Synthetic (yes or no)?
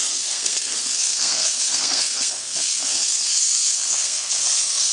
yes